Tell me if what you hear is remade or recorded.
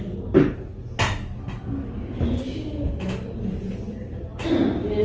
recorded